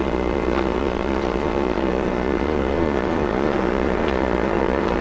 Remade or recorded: remade